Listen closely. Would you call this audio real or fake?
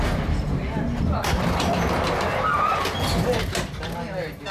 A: real